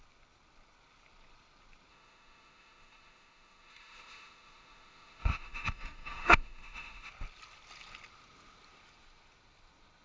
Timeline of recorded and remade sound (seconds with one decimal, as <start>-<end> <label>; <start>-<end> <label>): 0.0-1.9 recorded; 1.9-7.1 remade; 7.1-10.0 recorded